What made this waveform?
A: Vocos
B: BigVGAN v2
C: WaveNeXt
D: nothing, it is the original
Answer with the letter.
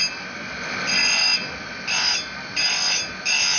D